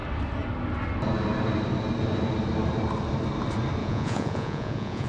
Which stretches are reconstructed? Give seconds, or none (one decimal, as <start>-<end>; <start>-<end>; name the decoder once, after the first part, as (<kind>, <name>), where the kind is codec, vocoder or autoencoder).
3.8-5.1 (vocoder, Vocos)